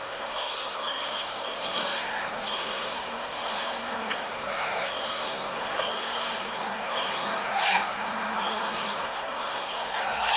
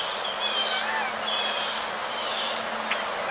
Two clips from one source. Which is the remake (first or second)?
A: first